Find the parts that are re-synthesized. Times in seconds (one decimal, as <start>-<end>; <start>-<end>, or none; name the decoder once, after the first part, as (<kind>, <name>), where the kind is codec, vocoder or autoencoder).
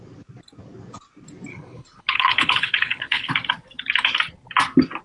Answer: 1.5-3.3 (codec, HILCodec)